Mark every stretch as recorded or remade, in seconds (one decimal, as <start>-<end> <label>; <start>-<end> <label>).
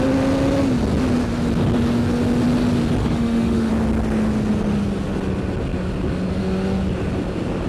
0.0-3.0 recorded; 3.0-3.7 remade; 3.7-7.7 recorded